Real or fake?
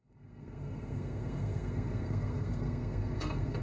fake